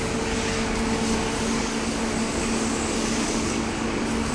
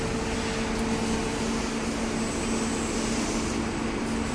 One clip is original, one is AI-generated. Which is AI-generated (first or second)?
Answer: first